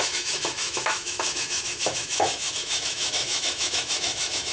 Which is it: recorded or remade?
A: remade